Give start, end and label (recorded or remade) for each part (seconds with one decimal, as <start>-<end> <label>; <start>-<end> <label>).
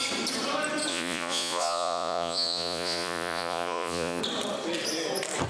0.0-0.9 recorded; 0.9-4.2 remade; 4.2-5.5 recorded